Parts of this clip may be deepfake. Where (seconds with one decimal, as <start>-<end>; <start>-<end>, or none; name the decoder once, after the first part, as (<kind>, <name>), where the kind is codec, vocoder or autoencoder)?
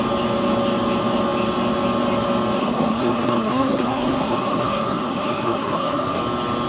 2.6-6.2 (codec, SNAC)